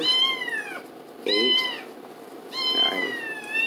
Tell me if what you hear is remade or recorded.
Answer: recorded